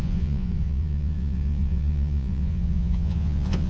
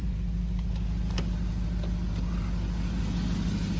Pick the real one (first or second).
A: second